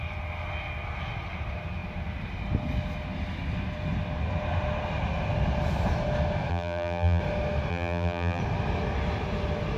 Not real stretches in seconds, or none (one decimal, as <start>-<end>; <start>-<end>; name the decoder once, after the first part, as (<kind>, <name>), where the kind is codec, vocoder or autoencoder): 6.5-7.2 (vocoder, BigVGAN v2); 7.7-8.4